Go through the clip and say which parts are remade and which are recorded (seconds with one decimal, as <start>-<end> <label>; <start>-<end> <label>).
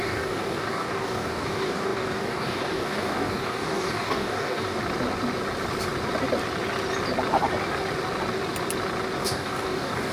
0.0-4.8 remade; 4.8-9.2 recorded; 9.2-10.1 remade